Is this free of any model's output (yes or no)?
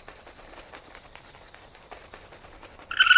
yes